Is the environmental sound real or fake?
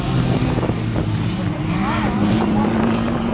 fake